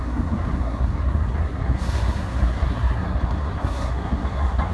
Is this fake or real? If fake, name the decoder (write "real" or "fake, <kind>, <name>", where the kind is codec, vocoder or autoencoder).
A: fake, codec, SNAC